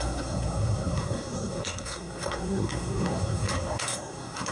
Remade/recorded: remade